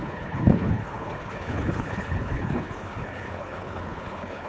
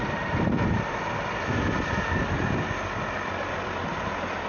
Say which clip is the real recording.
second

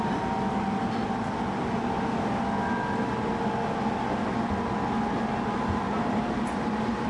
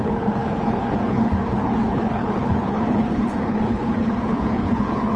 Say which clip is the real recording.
first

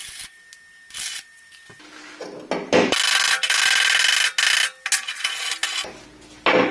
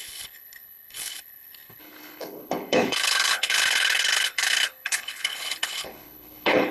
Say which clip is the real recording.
first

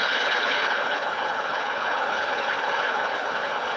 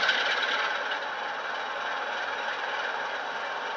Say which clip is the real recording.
second